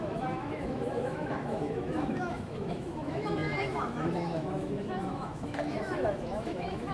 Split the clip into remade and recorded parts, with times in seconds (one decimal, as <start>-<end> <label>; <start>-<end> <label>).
0.0-6.9 remade